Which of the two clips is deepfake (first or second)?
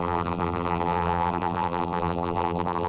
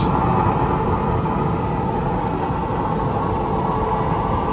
first